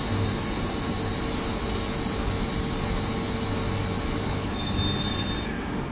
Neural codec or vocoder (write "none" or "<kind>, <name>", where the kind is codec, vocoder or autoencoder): none